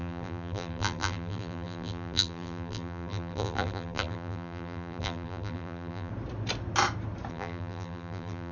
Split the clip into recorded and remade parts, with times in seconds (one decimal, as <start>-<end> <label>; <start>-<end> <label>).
0.0-6.1 remade; 6.1-7.3 recorded; 7.3-8.5 remade